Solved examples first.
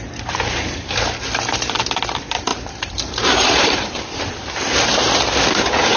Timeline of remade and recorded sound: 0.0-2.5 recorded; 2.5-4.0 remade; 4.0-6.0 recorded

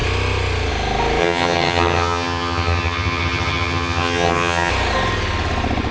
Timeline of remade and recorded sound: 0.0-1.2 recorded; 1.2-4.7 remade; 4.7-5.9 recorded

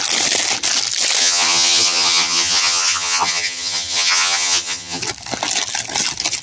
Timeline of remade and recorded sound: 0.0-1.2 recorded; 1.2-5.0 remade; 5.0-6.4 recorded

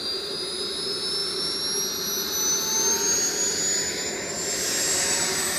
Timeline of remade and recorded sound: 0.0-5.6 recorded

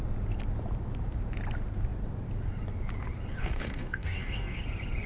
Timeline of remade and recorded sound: 0.0-3.4 recorded; 3.4-4.6 remade; 4.6-5.1 recorded

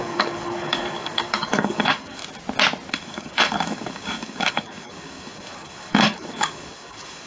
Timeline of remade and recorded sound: 0.0-2.2 remade; 2.2-2.9 recorded; 2.9-7.3 remade

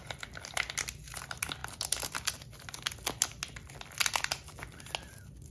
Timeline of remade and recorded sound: 0.0-5.5 recorded